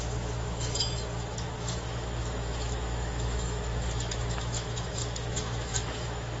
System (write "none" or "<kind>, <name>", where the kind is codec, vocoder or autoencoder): autoencoder, DAC-VAE